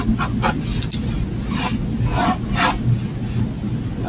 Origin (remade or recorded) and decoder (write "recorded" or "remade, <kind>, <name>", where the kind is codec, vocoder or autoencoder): recorded